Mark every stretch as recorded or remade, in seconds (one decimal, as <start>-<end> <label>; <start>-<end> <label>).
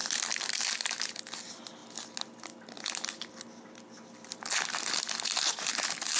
0.0-6.2 recorded